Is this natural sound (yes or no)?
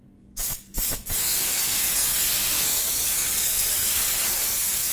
no